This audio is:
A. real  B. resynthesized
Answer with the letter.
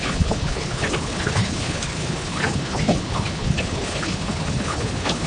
B